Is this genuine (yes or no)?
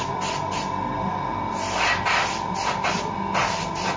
yes